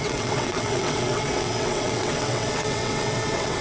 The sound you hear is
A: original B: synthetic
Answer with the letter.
B